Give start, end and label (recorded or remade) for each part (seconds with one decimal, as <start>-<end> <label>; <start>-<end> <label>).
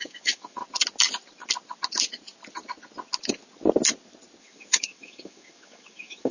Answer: 0.0-0.6 remade; 0.6-4.4 recorded; 4.4-6.3 remade